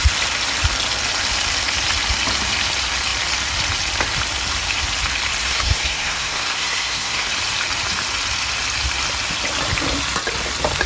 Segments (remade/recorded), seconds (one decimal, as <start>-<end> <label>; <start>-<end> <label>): 0.0-5.4 recorded; 5.4-7.3 remade; 7.3-10.9 recorded